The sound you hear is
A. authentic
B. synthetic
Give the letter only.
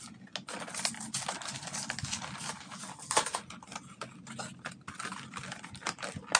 A